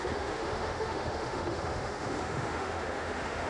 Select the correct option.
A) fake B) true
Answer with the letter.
A